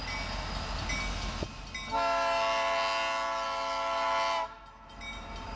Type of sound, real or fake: real